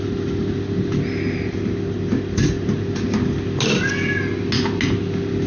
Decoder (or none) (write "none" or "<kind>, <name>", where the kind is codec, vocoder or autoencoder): none